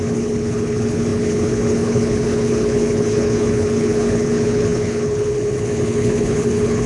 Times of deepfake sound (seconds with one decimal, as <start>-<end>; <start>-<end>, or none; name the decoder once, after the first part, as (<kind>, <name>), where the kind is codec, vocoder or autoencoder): 0.0-6.9 (codec, HILCodec)